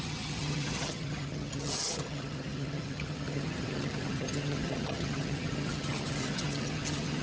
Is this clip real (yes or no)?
no